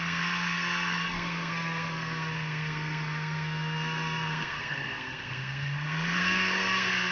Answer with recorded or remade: remade